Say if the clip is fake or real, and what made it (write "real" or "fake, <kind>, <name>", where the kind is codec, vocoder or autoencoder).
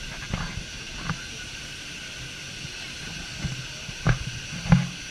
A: real